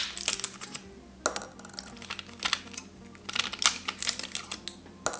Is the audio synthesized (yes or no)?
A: no